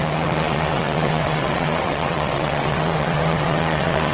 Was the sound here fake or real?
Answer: fake